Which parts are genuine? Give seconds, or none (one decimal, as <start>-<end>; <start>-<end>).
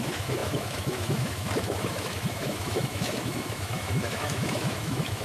none